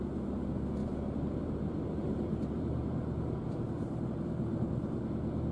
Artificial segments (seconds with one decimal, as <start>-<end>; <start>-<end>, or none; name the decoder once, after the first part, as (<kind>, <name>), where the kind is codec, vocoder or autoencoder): 0.8-4.1 (vocoder, BigVGAN v2); 4.5-5.0